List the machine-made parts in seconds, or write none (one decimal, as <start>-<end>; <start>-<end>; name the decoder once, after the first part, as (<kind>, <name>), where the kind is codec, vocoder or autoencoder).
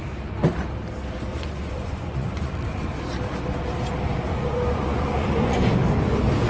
1.3-2.5 (vocoder, Vocos); 4.3-5.7